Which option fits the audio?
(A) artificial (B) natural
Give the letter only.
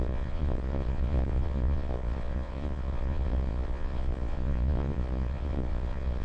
A